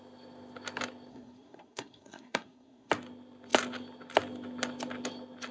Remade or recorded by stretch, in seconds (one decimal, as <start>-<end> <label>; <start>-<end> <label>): 0.0-1.1 recorded; 1.1-2.9 remade; 2.9-5.5 recorded